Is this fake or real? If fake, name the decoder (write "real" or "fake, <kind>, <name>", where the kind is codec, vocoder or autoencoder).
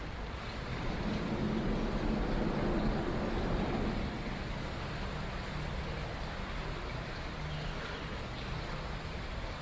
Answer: real